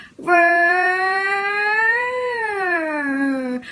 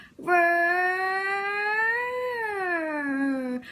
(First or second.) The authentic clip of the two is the second